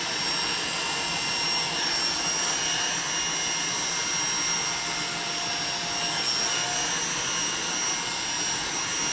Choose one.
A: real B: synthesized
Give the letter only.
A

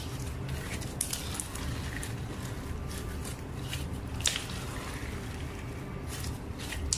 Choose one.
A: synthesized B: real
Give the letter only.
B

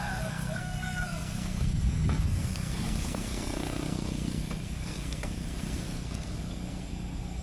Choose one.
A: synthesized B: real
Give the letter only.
A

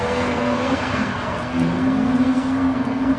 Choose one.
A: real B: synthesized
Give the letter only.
B